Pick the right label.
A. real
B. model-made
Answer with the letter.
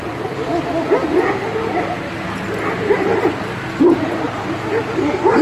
A